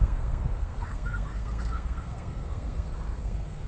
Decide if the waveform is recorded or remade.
remade